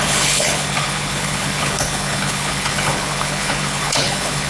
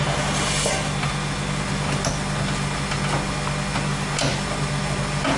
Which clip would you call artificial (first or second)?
first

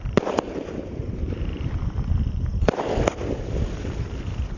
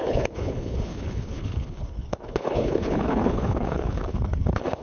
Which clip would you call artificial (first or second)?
second